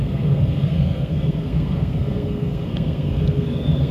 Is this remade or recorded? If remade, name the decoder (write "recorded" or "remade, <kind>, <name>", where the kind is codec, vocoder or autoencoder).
remade, codec, SNAC